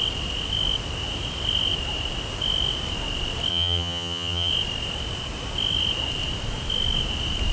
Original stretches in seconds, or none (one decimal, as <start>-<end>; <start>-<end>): 0.0-3.5; 4.5-7.5